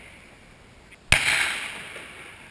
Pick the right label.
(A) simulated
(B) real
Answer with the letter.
B